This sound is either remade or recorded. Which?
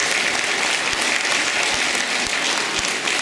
recorded